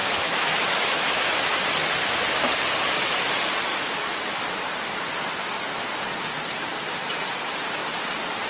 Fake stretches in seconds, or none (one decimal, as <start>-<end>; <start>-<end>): 0.0-1.6; 3.7-4.4